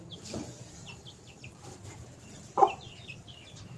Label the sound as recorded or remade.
recorded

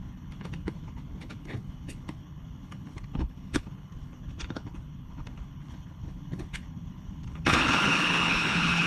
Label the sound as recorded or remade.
remade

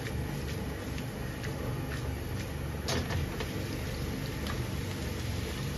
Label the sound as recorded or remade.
recorded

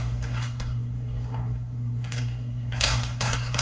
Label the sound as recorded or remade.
remade